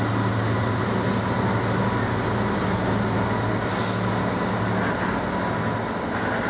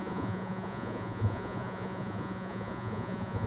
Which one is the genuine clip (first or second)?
first